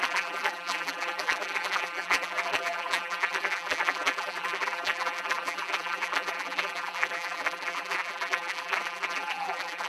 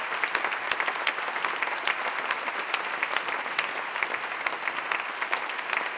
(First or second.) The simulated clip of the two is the first